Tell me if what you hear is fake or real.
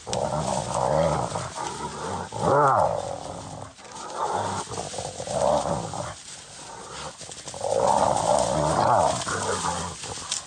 real